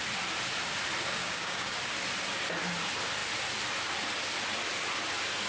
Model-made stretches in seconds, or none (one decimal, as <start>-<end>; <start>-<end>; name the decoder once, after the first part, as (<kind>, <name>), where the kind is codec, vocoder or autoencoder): 1.2-1.8 (codec, DAC)